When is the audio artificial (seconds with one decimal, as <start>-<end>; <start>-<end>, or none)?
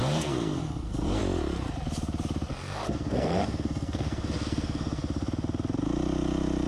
0.0-1.2; 2.5-5.0